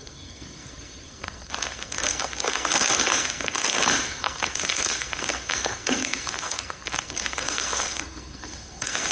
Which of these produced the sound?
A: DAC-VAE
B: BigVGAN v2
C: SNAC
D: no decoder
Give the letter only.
C